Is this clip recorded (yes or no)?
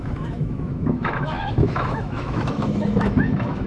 no